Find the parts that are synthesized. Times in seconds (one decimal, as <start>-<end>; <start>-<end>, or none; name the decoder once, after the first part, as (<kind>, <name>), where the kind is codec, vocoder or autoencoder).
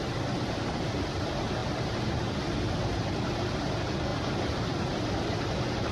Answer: 0.0-5.9 (vocoder, BigVGAN v2)